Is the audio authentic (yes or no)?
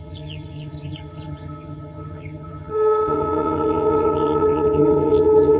no